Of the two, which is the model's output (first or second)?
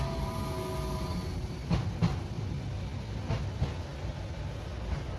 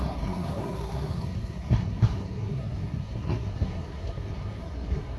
second